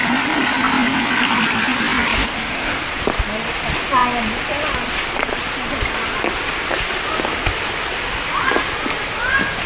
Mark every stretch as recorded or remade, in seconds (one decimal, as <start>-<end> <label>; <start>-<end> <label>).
0.0-2.2 recorded; 2.2-2.8 remade; 2.8-9.7 recorded